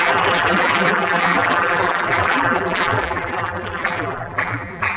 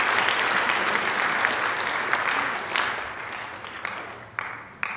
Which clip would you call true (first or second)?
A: second